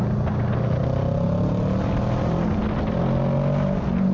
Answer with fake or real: real